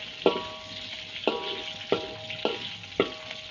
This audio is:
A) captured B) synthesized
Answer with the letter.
A